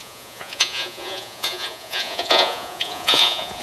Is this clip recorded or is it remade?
remade